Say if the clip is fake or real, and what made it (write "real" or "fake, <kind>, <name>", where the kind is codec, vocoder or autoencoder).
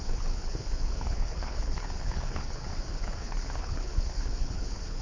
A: fake, codec, HILCodec